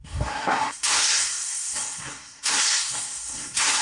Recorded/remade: remade